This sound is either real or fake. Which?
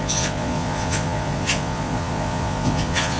fake